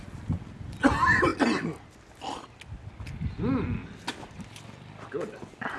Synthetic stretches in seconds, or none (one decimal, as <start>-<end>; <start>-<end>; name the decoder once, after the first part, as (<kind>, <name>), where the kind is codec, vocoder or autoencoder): none